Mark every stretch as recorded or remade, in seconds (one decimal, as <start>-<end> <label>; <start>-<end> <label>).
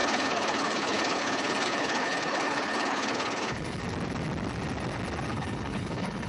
0.0-3.8 remade; 3.8-5.3 recorded; 5.3-6.3 remade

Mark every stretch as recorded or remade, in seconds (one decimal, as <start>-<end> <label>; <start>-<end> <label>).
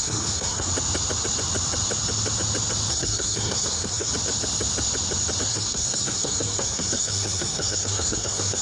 0.0-0.7 remade; 0.7-2.9 recorded; 2.9-4.1 remade; 4.1-5.5 recorded; 5.5-8.6 remade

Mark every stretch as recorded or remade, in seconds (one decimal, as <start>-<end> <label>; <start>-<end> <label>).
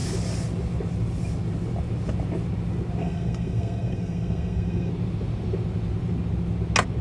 0.0-3.0 recorded; 3.0-4.9 remade; 4.9-7.0 recorded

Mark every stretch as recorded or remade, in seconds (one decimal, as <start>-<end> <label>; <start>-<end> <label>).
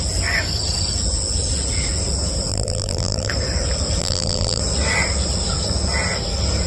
0.0-2.5 recorded; 2.5-3.3 remade; 3.3-4.0 recorded; 4.0-4.6 remade; 4.6-6.7 recorded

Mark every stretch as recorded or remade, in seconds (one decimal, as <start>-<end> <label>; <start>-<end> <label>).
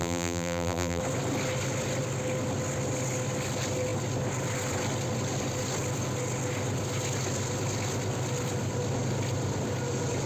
0.0-1.0 remade; 1.0-10.3 recorded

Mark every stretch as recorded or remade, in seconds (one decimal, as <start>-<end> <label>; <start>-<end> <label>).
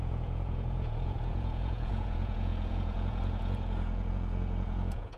0.0-5.2 remade